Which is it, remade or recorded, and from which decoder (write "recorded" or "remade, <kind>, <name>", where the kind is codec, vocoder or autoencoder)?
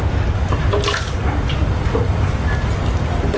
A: recorded